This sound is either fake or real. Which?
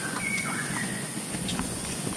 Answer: fake